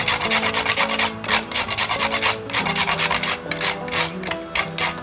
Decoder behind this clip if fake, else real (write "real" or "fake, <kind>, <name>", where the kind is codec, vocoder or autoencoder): real